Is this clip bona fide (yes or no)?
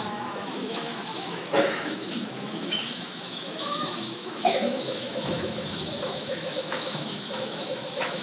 no